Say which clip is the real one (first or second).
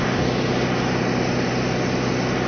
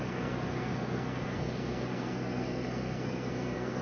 first